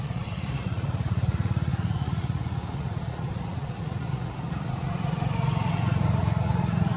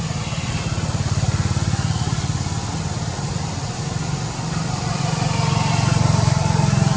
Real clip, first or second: second